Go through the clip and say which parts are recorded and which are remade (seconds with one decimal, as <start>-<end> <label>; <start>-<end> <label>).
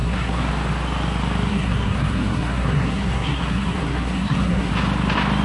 0.0-0.5 remade; 0.5-1.5 recorded; 1.5-4.7 remade; 4.7-5.4 recorded